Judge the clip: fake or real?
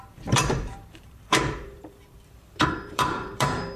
fake